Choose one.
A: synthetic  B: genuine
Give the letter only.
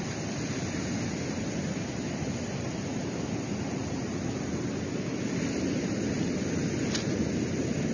B